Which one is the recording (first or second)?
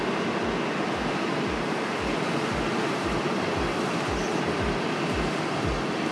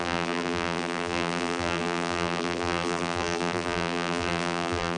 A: first